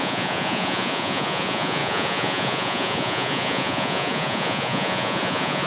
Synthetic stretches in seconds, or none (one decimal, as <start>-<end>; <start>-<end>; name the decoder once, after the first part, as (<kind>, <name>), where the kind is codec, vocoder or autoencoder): 0.0-5.7 (vocoder, Vocos)